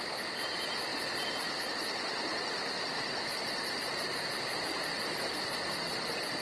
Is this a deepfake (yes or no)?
no